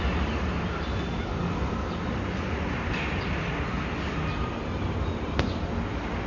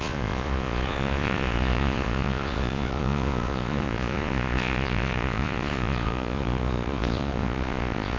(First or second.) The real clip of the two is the first